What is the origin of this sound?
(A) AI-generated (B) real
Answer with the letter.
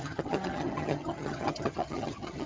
A